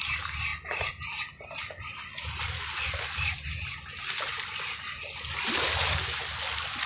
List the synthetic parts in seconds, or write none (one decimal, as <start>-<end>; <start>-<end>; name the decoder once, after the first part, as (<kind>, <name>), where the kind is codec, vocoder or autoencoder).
none